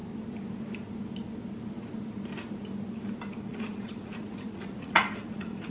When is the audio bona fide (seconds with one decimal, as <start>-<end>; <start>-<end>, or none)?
0.0-3.5